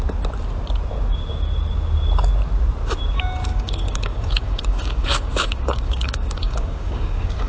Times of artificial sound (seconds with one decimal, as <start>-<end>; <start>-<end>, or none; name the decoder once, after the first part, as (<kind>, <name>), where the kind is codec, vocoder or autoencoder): 3.5-7.5 (codec, DAC)